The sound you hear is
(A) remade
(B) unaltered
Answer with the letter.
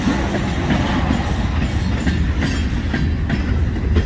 B